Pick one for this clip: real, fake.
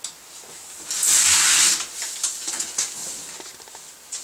real